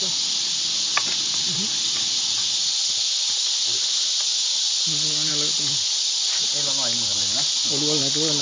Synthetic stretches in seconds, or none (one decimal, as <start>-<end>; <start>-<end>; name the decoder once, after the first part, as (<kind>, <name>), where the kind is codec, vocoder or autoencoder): none